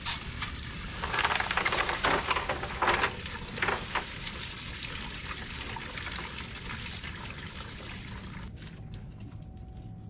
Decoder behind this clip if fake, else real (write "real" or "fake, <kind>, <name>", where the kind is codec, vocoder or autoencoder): real